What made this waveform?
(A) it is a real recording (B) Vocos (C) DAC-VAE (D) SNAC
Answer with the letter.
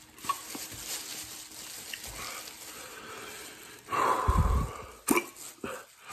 A